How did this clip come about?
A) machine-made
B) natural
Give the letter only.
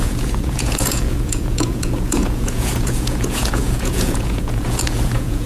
A